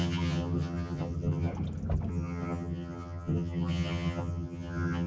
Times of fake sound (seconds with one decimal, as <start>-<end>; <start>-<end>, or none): 0.0-1.5; 2.1-5.1